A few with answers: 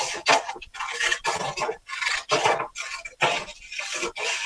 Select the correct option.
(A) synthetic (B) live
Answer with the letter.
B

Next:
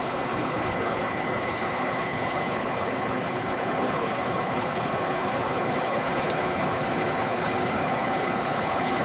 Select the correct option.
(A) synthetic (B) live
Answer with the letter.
A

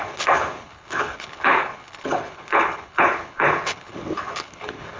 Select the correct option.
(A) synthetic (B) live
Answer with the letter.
A